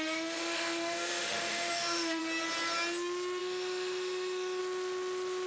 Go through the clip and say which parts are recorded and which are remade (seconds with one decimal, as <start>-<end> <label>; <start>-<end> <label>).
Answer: 0.0-2.2 remade; 2.2-3.4 recorded; 3.4-4.6 remade; 4.6-5.5 recorded